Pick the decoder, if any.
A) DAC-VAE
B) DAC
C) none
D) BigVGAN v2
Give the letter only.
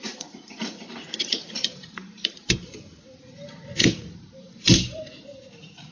D